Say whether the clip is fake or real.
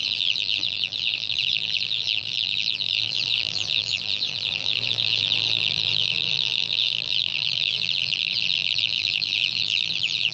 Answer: fake